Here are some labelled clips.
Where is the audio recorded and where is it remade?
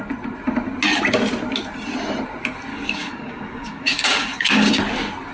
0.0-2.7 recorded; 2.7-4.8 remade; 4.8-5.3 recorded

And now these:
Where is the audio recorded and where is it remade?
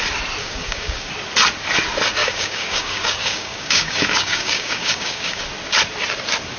0.0-0.4 recorded; 0.4-1.1 remade; 1.1-2.2 recorded; 2.2-5.4 remade; 5.4-6.6 recorded